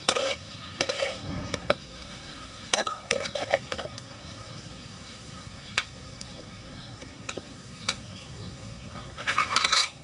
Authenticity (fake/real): fake